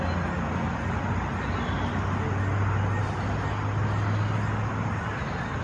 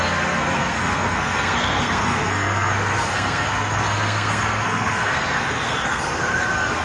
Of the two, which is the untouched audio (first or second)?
first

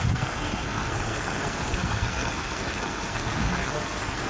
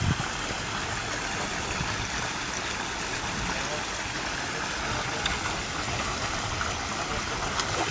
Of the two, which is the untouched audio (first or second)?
second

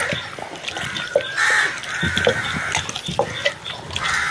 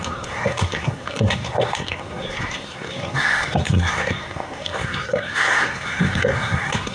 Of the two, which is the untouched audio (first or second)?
first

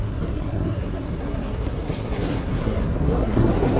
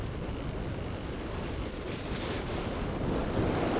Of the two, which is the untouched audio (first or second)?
second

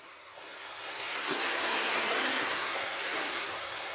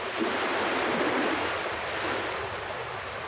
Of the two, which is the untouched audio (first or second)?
second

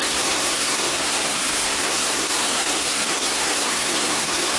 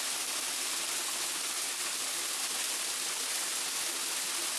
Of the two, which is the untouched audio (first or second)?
second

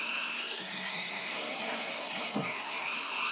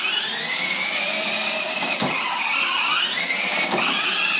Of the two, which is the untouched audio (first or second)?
second